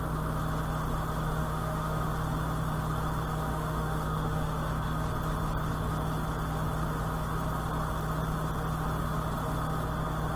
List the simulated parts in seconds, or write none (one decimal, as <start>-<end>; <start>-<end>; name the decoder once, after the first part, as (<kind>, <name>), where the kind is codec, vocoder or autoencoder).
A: 1.4-2.1 (autoencoder, DAC-VAE); 3.5-5.0